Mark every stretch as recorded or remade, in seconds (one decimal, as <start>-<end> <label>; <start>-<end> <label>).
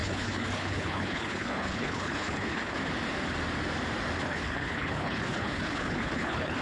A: 0.0-2.9 remade; 2.9-4.2 recorded; 4.2-6.6 remade